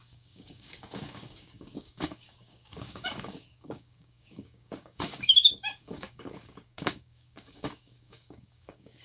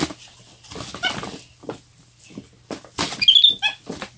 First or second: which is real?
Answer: second